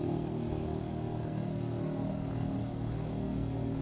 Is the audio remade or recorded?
remade